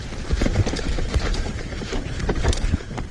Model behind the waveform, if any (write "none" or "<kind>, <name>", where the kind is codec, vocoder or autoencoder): vocoder, BigVGAN v2